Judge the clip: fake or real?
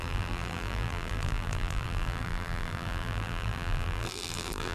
fake